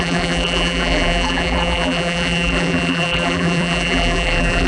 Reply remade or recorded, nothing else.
remade